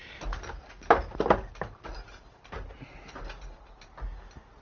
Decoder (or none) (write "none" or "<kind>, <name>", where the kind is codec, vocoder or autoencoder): none